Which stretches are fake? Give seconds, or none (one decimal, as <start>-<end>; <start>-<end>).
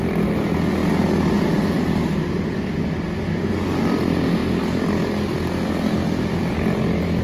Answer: none